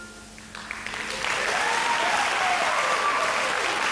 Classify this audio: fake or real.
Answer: real